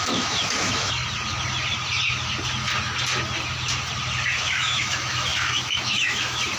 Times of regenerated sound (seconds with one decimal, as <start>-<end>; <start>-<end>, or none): 0.0-1.0; 4.4-6.6